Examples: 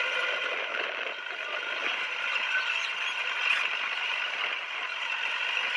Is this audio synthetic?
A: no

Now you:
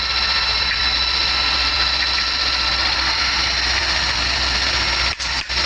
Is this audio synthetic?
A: no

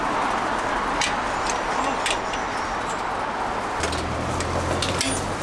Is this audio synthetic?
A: no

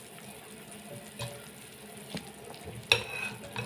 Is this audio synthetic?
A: no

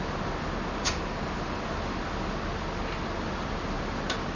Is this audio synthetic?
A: no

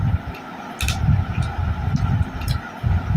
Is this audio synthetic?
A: no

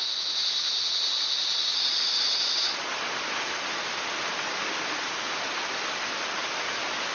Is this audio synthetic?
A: yes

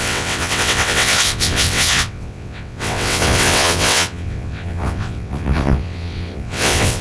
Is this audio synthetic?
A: yes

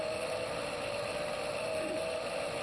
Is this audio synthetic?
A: no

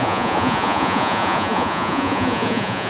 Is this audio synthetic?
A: yes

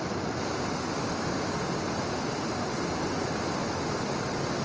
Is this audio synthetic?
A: no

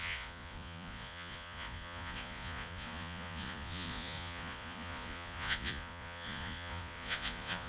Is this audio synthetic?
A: yes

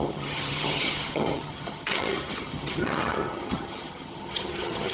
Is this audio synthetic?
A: yes